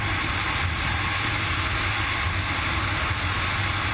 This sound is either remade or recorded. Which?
recorded